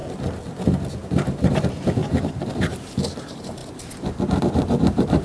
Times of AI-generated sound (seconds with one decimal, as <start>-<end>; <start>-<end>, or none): 1.0-3.6; 4.4-5.2